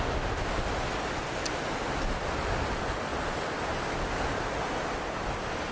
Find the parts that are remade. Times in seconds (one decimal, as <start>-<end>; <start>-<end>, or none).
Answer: none